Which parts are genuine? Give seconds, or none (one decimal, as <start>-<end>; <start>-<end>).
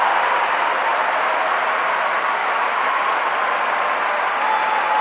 0.0-2.4; 3.0-5.0